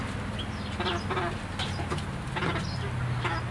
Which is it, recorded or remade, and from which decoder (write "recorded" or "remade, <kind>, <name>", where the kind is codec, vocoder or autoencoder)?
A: recorded